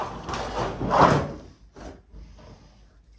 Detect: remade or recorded recorded